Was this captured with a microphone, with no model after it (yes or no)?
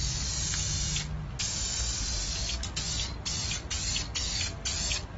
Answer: yes